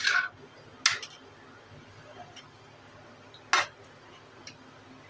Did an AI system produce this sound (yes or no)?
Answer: no